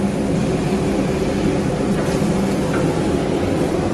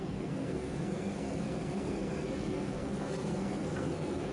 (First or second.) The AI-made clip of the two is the second